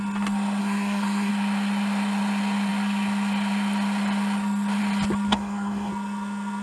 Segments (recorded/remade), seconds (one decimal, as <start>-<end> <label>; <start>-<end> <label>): 0.0-0.6 recorded; 0.6-1.3 remade; 1.3-5.3 recorded; 5.3-5.9 remade; 5.9-6.6 recorded